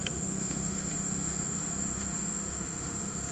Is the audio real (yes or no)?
no